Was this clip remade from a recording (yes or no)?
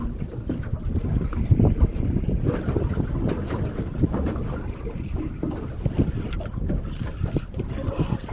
no